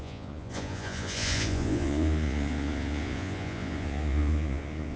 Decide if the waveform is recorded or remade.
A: remade